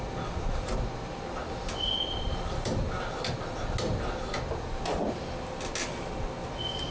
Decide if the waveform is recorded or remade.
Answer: recorded